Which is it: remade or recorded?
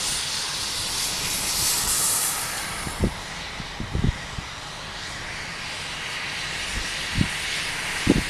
recorded